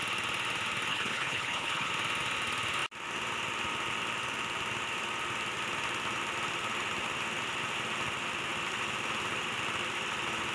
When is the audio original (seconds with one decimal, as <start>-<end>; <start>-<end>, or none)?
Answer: 0.0-0.9; 1.9-10.5